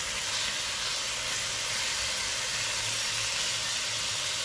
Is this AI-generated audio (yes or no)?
no